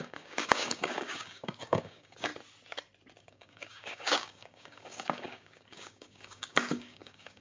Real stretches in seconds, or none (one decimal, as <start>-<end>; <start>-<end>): 2.3-3.2